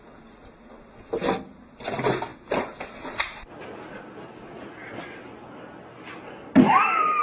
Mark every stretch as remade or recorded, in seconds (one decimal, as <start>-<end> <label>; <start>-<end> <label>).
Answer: 0.0-7.2 recorded